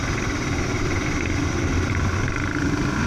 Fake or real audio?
real